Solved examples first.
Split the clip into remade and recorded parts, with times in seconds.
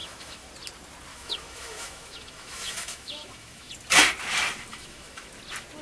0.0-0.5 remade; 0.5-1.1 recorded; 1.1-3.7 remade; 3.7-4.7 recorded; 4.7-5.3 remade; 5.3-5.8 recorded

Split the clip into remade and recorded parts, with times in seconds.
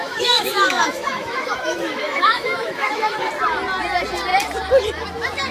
0.0-3.3 remade; 3.3-5.5 recorded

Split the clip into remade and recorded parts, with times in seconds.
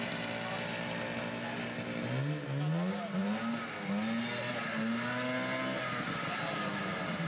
0.0-7.3 recorded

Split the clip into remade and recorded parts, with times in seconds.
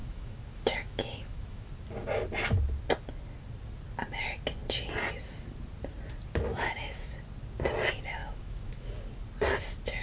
0.0-1.7 remade; 1.7-6.5 recorded; 6.5-7.1 remade; 7.1-8.2 recorded; 8.2-8.9 remade; 8.9-10.0 recorded